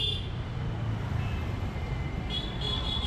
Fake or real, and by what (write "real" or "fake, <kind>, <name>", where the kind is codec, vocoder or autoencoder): real